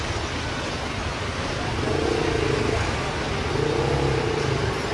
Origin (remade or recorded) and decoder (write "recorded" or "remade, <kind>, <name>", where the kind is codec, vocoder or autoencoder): recorded